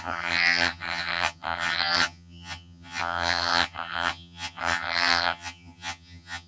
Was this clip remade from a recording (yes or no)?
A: yes